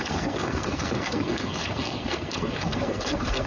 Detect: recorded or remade remade